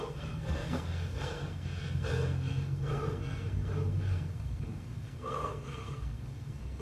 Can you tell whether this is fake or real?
fake